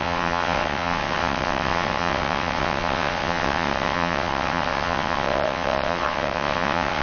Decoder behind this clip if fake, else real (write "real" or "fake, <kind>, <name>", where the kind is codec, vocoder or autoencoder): fake, vocoder, WaveNeXt